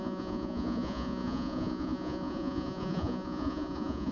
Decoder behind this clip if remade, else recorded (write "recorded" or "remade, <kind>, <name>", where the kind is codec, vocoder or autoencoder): remade, vocoder, Vocos